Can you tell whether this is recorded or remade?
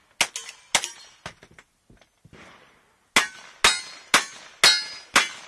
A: recorded